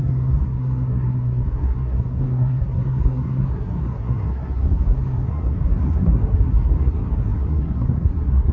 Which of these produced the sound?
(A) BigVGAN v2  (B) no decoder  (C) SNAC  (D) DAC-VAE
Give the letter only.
C